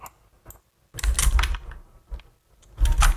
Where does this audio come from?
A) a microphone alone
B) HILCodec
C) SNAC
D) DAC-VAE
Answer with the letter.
A